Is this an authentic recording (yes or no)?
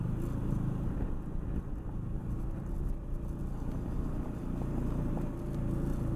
yes